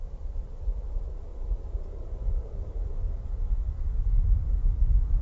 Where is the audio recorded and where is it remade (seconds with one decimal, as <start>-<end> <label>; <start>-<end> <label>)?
0.0-5.2 recorded

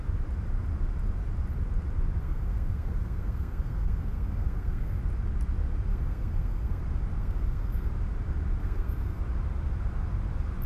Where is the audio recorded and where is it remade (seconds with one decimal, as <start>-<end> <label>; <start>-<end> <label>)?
0.0-2.2 recorded; 2.2-5.0 remade; 5.0-5.9 recorded; 5.9-6.8 remade; 6.8-7.2 recorded; 7.2-7.9 remade; 7.9-8.6 recorded; 8.6-9.2 remade; 9.2-10.7 recorded

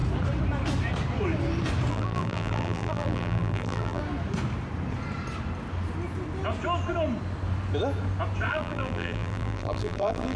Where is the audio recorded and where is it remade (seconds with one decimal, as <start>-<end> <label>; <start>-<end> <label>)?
0.0-1.9 recorded; 1.9-4.0 remade; 4.0-8.5 recorded; 8.5-10.4 remade

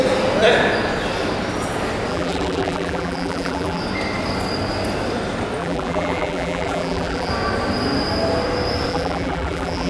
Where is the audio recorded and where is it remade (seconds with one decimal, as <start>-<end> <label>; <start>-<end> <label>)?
0.0-2.1 recorded; 2.1-3.8 remade; 3.8-5.6 recorded; 5.6-7.3 remade; 7.3-8.9 recorded; 8.9-9.9 remade

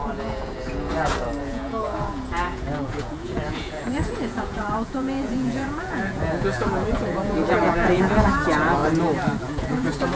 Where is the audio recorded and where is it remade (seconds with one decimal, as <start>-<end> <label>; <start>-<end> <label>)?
0.0-0.9 remade; 0.9-1.4 recorded; 1.4-8.8 remade; 8.8-9.4 recorded; 9.4-10.2 remade

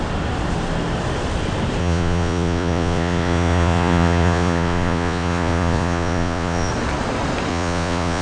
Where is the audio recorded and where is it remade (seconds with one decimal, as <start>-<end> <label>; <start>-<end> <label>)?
0.0-1.8 recorded; 1.8-6.7 remade; 6.7-7.5 recorded; 7.5-8.2 remade